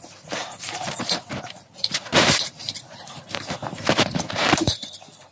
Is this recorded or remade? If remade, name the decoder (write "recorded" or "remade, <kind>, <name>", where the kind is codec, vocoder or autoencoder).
remade, vocoder, BigVGAN v2